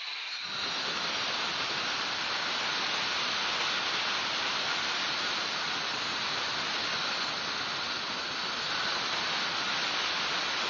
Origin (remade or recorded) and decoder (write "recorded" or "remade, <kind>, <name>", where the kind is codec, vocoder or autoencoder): recorded